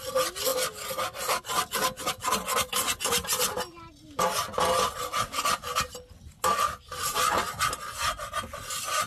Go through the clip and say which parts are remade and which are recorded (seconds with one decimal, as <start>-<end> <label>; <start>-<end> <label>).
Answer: 0.0-9.1 recorded